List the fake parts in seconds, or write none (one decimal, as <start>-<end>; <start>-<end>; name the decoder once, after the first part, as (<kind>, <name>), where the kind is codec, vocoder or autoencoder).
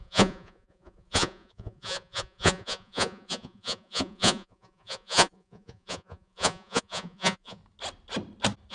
0.0-7.6 (vocoder, Vocos)